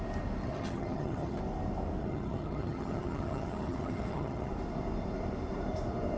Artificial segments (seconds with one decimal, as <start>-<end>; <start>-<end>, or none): 0.4-1.4; 2.0-4.5